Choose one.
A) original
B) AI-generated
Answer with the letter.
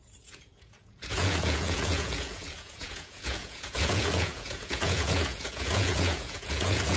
B